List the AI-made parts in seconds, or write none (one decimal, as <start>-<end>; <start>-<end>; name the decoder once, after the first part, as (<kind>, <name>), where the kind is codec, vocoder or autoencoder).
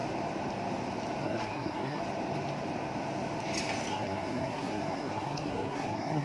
1.2-2.0 (codec, SNAC); 3.9-6.2